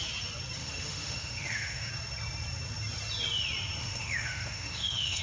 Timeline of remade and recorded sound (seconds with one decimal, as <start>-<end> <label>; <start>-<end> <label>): 0.0-0.6 recorded; 0.6-1.9 remade; 1.9-3.8 recorded; 3.8-5.2 remade